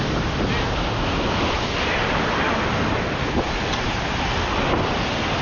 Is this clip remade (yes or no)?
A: no